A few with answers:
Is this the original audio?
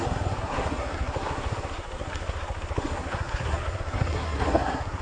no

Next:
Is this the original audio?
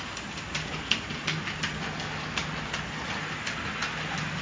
yes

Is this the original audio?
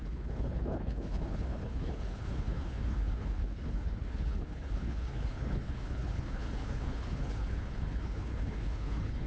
no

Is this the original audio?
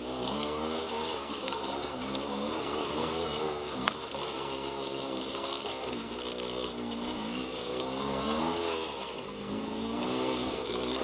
no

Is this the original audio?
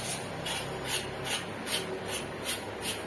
yes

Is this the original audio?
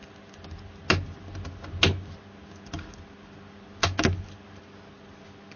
yes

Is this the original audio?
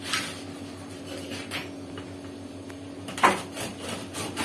yes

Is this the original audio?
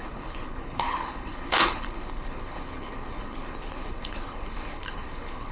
no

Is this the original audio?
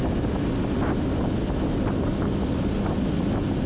yes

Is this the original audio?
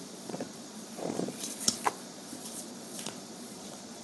no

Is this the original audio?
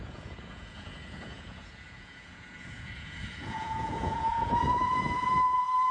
no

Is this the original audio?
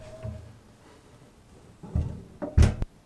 yes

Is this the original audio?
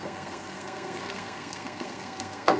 no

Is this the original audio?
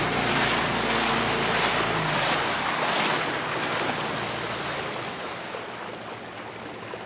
yes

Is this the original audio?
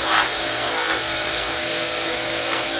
no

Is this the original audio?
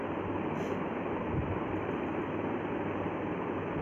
yes